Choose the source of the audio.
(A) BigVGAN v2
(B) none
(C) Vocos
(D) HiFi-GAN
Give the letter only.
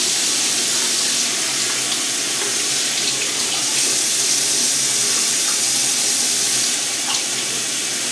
B